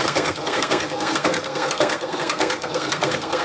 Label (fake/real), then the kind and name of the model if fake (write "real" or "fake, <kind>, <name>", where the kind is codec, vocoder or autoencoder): fake, codec, SNAC